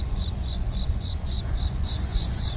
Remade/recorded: remade